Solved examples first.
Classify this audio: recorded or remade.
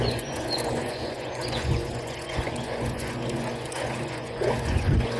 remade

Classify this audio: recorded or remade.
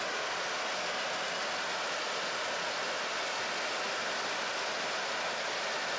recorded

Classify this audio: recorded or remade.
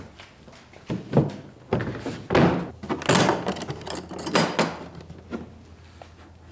recorded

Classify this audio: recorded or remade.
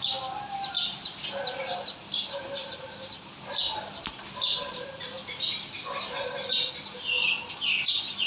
recorded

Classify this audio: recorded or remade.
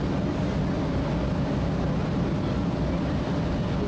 recorded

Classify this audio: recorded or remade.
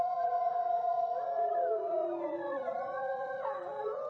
remade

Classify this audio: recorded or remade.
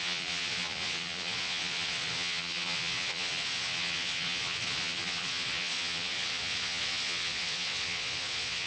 remade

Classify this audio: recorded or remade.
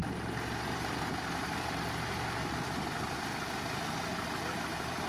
recorded